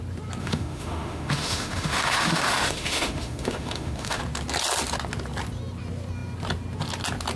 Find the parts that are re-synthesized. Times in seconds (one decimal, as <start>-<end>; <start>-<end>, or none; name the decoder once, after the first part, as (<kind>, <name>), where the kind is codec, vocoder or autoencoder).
0.4-4.2 (autoencoder, DAC-VAE)